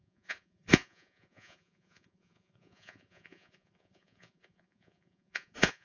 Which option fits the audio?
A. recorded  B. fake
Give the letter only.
B